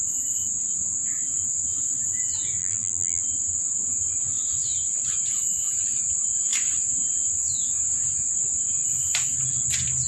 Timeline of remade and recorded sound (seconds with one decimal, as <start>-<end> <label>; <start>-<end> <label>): 0.0-2.6 recorded; 2.6-3.2 remade; 3.2-10.1 recorded

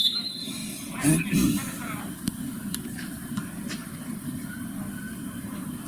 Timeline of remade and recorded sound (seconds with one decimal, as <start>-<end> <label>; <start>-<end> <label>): 0.0-0.6 remade; 0.6-2.0 recorded; 2.0-3.2 remade; 3.2-5.0 recorded; 5.0-5.9 remade

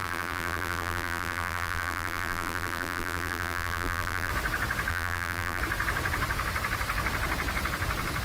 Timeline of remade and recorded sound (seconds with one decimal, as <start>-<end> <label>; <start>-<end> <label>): 0.0-4.3 remade; 4.3-4.9 recorded; 4.9-5.6 remade; 5.6-8.2 recorded

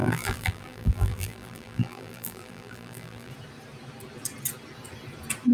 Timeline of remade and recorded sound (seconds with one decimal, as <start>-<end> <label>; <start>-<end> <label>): 0.0-3.3 remade; 3.3-5.5 recorded

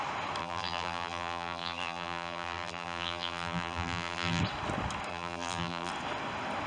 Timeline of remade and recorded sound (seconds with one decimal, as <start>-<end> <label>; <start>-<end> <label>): 0.0-0.4 recorded; 0.4-4.4 remade; 4.4-5.1 recorded; 5.1-5.9 remade; 5.9-6.7 recorded

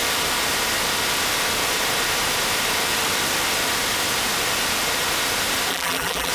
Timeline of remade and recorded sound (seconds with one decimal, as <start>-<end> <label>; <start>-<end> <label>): 0.0-5.7 recorded; 5.7-6.3 remade

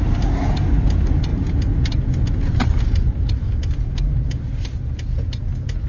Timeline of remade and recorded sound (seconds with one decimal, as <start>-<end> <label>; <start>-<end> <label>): 0.0-5.9 recorded

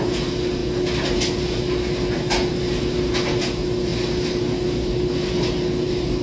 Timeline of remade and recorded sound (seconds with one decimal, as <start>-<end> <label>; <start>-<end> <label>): 0.0-6.2 recorded